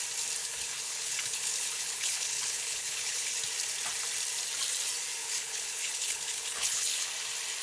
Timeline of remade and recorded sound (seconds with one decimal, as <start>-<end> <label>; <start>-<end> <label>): 0.0-0.4 recorded; 0.4-3.4 remade; 3.4-5.2 recorded; 5.2-7.1 remade; 7.1-7.6 recorded